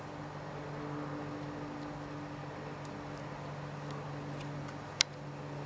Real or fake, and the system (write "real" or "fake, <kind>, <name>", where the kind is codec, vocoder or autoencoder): real